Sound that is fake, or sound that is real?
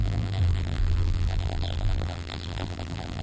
fake